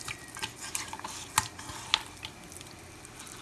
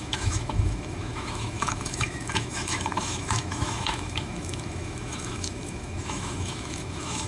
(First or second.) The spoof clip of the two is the second